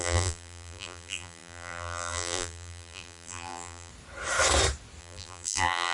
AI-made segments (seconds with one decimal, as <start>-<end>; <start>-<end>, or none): 0.0-3.9; 5.0-5.9